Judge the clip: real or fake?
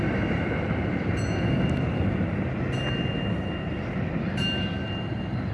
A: real